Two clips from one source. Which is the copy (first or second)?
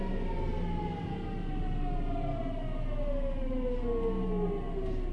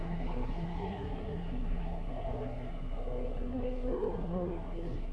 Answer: second